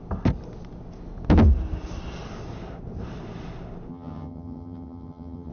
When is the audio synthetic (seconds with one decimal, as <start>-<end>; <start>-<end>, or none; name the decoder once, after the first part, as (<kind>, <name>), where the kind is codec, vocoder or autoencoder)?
3.9-5.5 (vocoder, HiFi-GAN)